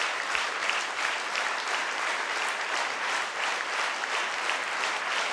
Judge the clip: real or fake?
real